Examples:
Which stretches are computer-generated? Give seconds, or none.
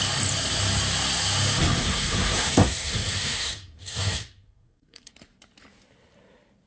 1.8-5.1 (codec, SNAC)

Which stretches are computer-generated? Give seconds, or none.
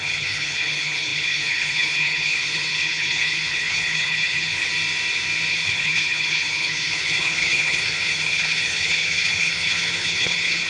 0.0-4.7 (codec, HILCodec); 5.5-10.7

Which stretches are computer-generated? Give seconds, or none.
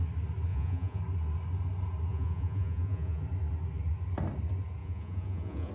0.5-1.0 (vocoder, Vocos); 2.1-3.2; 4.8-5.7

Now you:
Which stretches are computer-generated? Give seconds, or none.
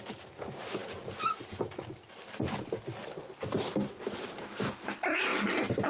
5.3-5.9 (vocoder, BigVGAN v2)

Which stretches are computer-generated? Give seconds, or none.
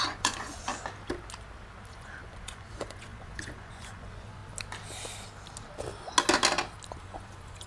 0.0-0.7 (vocoder, Vocos); 1.9-4.4; 6.9-7.7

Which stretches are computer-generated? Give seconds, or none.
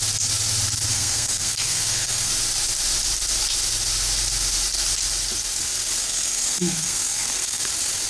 0.9-2.3 (codec, SNAC); 6.0-7.6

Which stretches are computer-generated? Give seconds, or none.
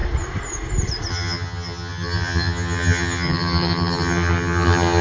1.1-5.0 (vocoder, HiFi-GAN)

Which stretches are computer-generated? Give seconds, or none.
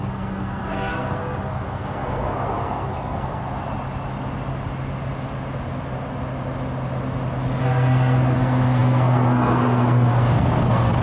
0.0-3.4 (codec, SNAC); 7.6-11.0